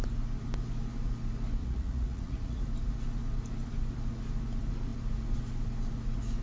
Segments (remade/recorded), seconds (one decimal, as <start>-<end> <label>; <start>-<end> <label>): 0.0-1.6 recorded; 1.6-2.6 remade; 2.6-6.4 recorded

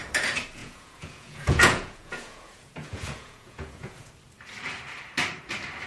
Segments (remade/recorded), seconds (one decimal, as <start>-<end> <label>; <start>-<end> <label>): 0.0-0.6 recorded; 0.6-4.1 remade; 4.1-5.9 recorded